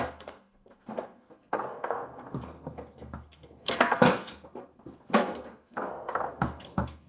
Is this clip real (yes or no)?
no